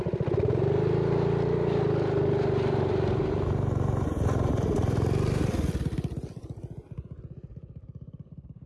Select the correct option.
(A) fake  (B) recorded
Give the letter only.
A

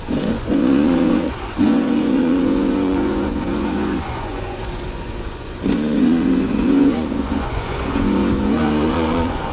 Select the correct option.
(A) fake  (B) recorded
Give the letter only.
A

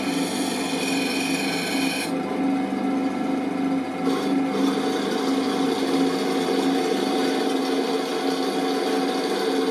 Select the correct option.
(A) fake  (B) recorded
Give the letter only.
B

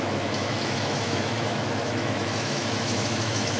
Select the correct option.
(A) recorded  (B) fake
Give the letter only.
B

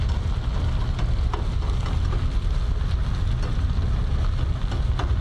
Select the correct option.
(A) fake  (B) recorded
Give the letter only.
B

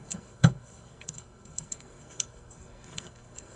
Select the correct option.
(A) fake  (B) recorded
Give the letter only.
A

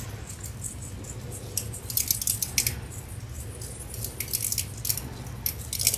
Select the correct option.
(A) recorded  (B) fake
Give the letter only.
A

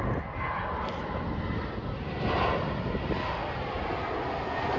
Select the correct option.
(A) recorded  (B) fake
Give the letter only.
A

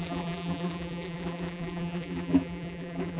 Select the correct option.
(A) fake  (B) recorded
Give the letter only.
A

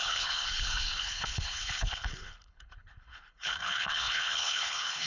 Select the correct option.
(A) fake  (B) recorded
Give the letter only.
A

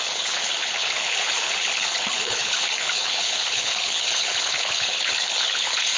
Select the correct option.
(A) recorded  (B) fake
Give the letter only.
B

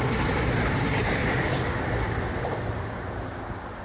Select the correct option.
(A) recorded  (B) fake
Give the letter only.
A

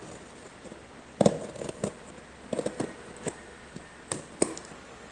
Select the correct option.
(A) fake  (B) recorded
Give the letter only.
B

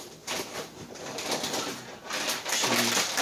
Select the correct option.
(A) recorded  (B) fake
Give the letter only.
A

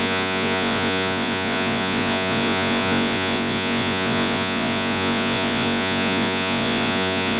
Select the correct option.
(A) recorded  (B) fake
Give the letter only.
B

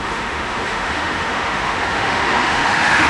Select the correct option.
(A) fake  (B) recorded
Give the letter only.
A